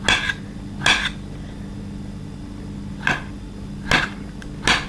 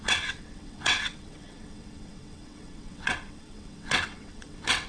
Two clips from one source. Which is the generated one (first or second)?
second